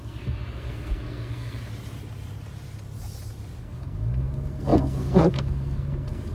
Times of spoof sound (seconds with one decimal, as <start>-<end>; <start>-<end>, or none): 0.0-1.7; 3.6-6.3